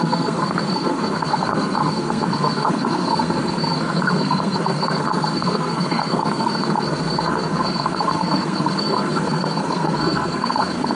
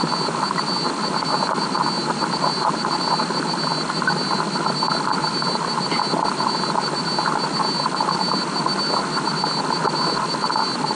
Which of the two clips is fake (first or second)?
first